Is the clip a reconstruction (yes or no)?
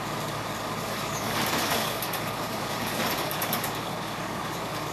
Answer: yes